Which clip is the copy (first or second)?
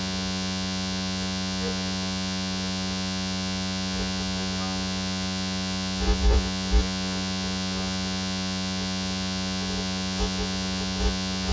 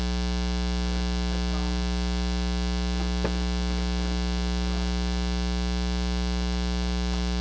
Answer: first